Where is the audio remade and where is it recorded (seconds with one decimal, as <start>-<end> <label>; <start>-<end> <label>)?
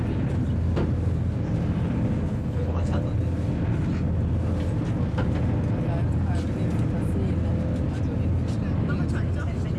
0.0-2.3 recorded; 2.3-3.0 remade; 3.0-9.8 recorded